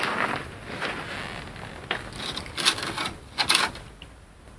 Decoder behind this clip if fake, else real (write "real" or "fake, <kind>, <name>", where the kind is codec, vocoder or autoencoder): real